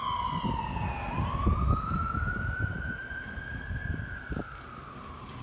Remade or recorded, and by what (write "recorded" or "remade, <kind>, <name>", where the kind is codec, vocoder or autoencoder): recorded